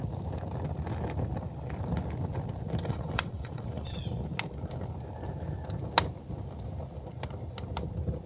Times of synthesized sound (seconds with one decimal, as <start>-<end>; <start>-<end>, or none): 2.9-4.0